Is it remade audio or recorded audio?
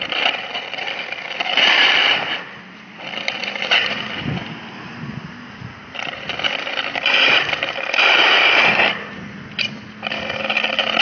recorded